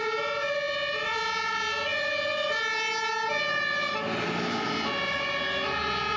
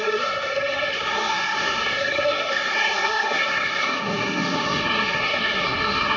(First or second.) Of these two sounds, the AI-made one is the second